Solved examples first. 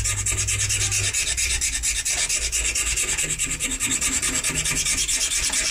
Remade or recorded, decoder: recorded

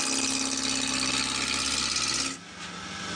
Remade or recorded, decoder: recorded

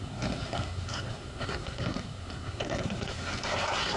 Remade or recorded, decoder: remade, codec, SNAC